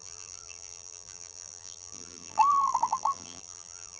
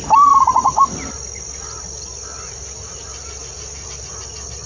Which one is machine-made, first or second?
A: first